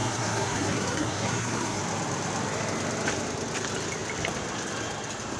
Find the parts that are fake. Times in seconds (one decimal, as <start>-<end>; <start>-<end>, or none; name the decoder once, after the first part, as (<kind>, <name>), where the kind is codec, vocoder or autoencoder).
0.0-1.8 (codec, SNAC)